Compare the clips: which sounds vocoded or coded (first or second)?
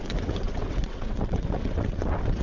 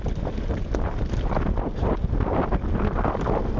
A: first